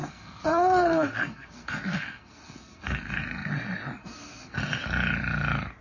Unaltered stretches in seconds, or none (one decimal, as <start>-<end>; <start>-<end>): 3.5-4.0; 4.6-5.8